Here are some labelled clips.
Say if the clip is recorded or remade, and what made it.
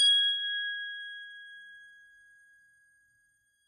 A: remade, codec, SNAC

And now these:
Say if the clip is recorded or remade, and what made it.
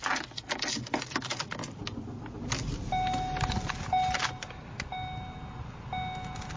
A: recorded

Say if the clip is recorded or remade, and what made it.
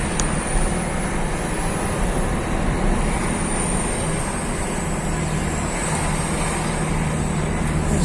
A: recorded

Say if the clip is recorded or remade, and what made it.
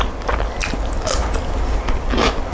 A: recorded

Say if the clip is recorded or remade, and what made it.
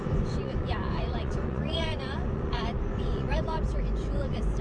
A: remade, vocoder, Vocos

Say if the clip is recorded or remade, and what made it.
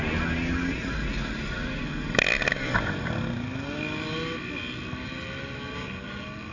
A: recorded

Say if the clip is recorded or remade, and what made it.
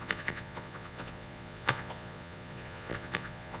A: remade, vocoder, Vocos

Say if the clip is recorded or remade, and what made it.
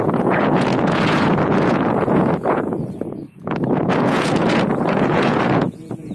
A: remade, vocoder, Vocos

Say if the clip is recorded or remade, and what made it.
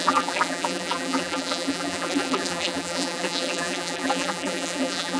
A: remade, vocoder, BigVGAN v2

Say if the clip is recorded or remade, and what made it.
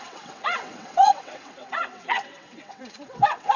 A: remade, vocoder, WaveNeXt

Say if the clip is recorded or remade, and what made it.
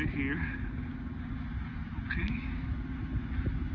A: recorded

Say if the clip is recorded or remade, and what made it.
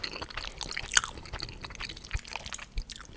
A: recorded